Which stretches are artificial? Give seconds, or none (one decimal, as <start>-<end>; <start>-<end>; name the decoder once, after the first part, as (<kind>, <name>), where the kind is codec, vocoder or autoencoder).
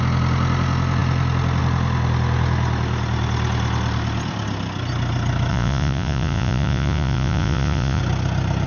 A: 5.5-8.0 (vocoder, Vocos)